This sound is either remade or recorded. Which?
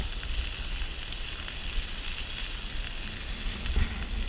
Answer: recorded